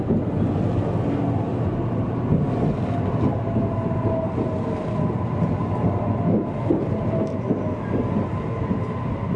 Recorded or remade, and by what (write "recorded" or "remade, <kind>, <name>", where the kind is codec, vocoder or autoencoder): recorded